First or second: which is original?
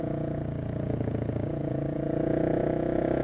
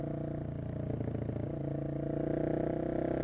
second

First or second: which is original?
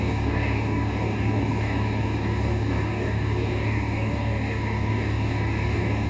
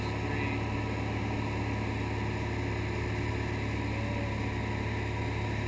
second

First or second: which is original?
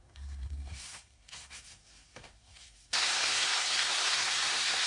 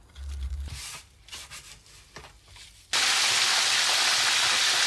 second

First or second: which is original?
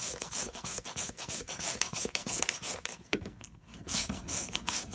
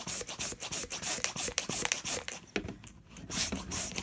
second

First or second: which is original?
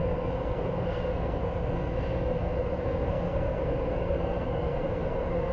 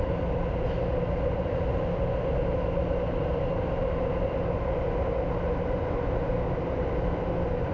second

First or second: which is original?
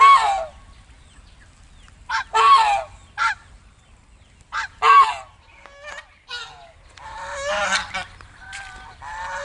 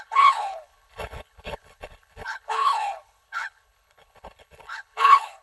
first